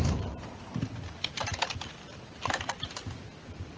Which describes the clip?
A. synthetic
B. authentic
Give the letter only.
B